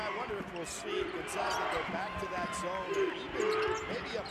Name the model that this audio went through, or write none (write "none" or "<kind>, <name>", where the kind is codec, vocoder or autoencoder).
none